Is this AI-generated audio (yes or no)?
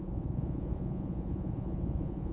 yes